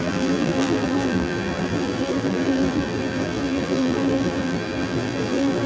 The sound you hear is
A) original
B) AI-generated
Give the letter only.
B